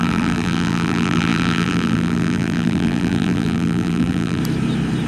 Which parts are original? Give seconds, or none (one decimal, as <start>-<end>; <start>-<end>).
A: 4.4-5.1